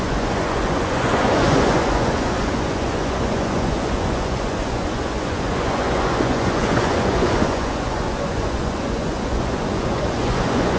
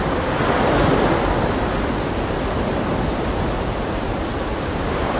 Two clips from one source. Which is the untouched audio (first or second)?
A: second